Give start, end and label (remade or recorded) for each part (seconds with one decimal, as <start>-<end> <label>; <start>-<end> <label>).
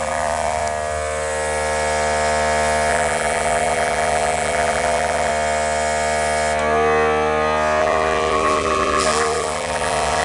0.0-0.6 remade; 0.6-2.9 recorded; 2.9-5.3 remade; 5.3-7.8 recorded; 7.8-10.2 remade